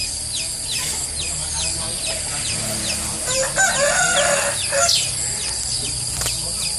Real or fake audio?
real